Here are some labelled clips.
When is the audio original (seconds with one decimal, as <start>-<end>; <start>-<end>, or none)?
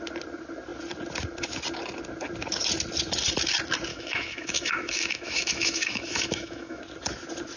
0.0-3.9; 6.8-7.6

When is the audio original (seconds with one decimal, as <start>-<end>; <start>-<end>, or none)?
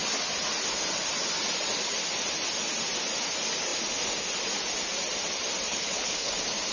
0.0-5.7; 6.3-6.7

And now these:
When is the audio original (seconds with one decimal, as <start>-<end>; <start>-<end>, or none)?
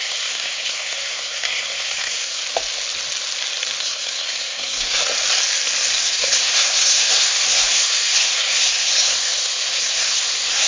2.4-3.8; 5.0-6.0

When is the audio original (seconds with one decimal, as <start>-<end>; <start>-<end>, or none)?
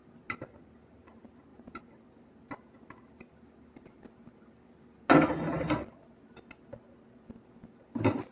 0.0-8.3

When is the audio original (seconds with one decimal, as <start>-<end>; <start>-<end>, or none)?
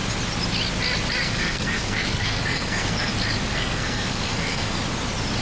0.0-1.2; 3.1-3.5; 4.8-5.4